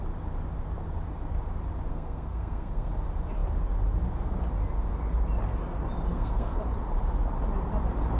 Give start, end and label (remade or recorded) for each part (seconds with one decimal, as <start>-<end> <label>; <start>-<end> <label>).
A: 0.0-1.9 recorded; 1.9-2.9 remade; 2.9-6.1 recorded; 6.1-6.6 remade; 6.6-8.2 recorded

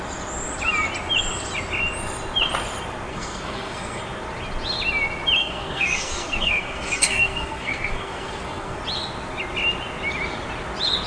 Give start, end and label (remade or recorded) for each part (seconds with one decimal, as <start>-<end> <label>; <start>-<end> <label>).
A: 0.0-3.1 recorded; 3.1-4.0 remade; 4.0-5.4 recorded; 5.4-8.8 remade; 8.8-11.1 recorded

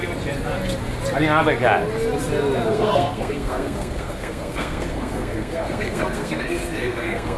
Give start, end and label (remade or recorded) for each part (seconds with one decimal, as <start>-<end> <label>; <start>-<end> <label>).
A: 0.0-2.7 recorded; 2.7-7.4 remade